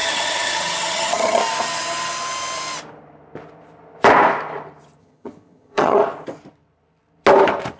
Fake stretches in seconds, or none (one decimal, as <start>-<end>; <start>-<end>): 0.0-1.4; 5.0-6.0